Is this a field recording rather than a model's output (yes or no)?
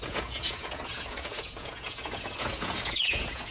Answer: no